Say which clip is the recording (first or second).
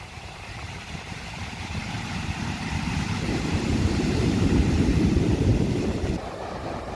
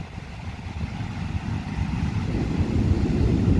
second